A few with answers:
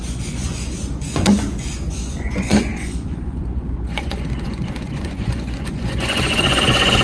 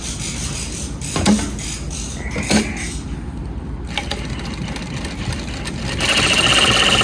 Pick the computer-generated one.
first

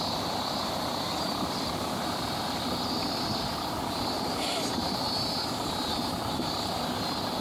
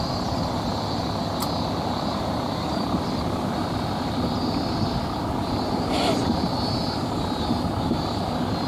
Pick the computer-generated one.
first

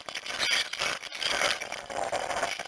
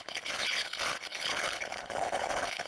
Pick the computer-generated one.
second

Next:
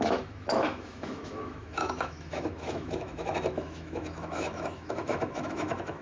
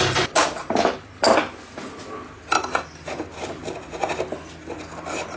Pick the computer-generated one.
first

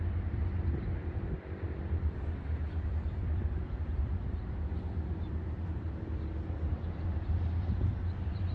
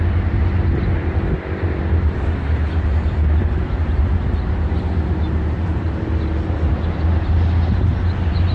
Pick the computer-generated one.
first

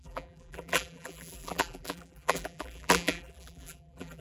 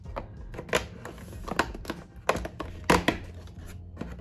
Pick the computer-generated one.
first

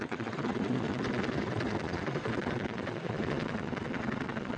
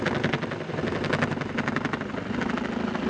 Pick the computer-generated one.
first